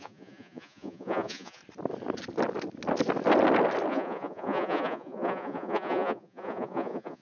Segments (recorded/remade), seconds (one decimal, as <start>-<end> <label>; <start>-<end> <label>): 0.0-1.6 remade; 1.6-3.9 recorded; 3.9-7.2 remade